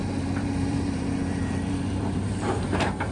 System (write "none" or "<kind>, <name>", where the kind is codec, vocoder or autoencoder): vocoder, BigVGAN v2